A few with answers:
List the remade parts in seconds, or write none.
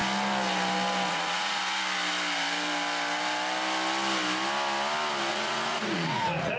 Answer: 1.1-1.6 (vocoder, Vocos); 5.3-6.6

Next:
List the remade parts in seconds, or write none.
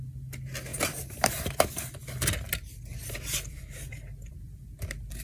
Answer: 0.7-1.7 (vocoder, BigVGAN v2); 3.0-4.6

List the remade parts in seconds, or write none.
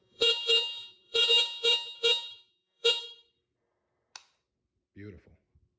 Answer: 0.0-3.0 (vocoder, Vocos)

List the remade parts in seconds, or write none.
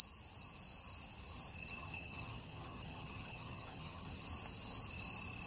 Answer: 1.6-4.1 (vocoder, HiFi-GAN)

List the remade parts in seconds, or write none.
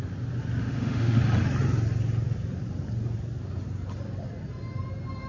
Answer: 0.6-1.2 (autoencoder, DAC-VAE)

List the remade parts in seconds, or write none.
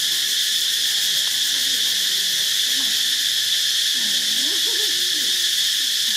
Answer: none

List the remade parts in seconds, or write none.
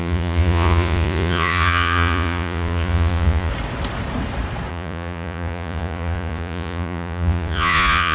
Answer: 0.0-3.5 (vocoder, Vocos); 4.7-8.1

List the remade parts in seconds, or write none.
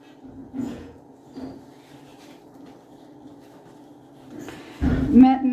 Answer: 0.4-1.0 (vocoder, Vocos)